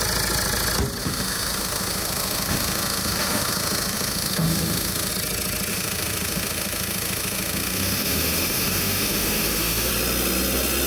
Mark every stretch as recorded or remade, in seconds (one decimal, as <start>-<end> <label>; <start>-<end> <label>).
0.0-1.0 recorded; 1.0-5.1 remade; 5.1-5.7 recorded; 5.7-9.9 remade; 9.9-10.9 recorded